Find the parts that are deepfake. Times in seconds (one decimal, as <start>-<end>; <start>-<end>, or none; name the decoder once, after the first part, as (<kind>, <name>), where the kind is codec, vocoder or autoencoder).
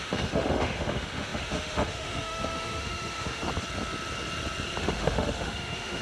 0.0-3.5 (autoencoder, DAC-VAE); 4.8-6.0